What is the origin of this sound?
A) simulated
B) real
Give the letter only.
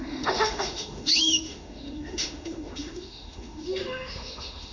A